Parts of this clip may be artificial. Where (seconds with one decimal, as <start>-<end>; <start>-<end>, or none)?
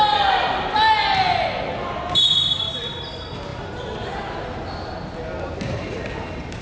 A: none